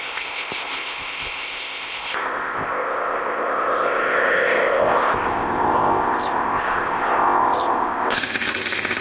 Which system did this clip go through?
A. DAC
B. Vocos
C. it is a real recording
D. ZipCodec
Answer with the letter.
D